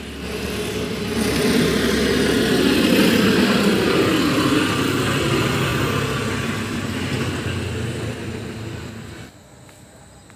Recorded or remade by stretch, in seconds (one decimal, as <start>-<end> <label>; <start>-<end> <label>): 0.0-10.4 recorded